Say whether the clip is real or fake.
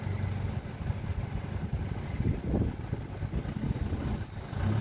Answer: real